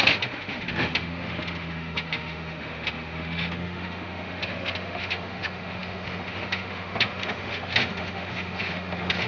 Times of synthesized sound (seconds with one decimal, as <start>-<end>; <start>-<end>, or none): 0.0-9.3